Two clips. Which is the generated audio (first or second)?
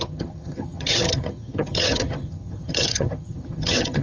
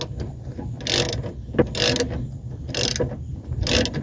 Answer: first